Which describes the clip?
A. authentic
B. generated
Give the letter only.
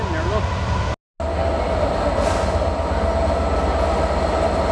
A